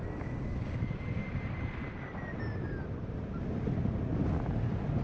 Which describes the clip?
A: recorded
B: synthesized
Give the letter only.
A